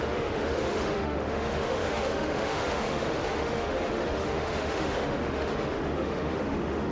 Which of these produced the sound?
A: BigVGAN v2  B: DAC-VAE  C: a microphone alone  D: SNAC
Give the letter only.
B